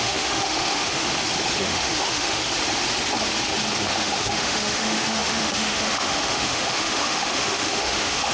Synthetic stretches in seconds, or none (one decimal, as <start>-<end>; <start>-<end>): 0.0-1.1; 1.6-2.4; 3.9-8.3